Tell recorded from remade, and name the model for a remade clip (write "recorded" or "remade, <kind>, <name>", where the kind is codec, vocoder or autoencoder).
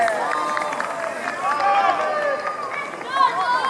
recorded